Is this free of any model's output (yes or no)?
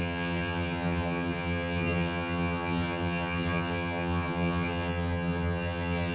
no